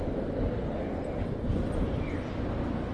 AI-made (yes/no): no